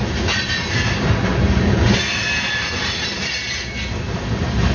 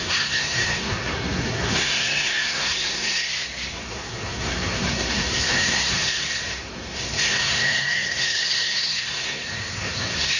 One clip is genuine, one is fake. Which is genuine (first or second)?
first